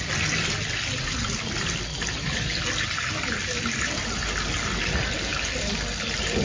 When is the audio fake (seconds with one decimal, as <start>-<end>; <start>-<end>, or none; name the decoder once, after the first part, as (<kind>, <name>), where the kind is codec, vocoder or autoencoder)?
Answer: none